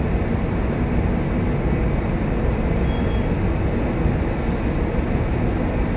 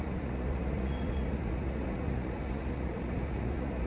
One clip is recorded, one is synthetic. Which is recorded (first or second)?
first